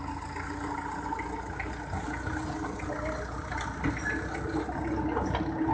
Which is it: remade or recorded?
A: recorded